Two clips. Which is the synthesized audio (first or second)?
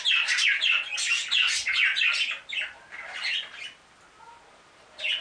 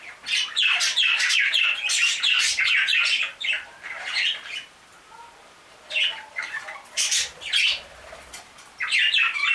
second